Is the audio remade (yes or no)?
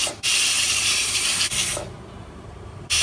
yes